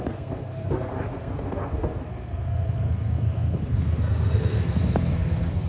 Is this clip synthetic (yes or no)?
yes